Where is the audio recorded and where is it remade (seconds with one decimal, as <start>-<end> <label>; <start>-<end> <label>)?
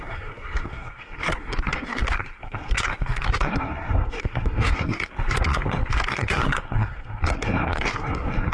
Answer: 0.0-8.5 remade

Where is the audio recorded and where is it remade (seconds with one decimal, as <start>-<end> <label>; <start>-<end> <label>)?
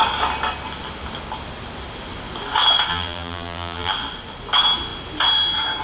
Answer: 0.0-2.9 recorded; 2.9-3.9 remade; 3.9-5.8 recorded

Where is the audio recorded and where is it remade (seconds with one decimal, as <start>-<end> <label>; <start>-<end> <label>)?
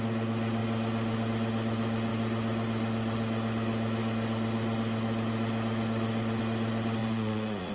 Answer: 0.0-7.0 recorded; 7.0-7.7 remade